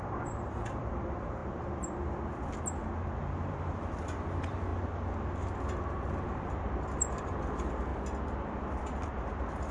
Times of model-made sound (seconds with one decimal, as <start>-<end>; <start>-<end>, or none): 0.0-1.4; 3.2-4.7; 7.2-7.9; 8.7-9.7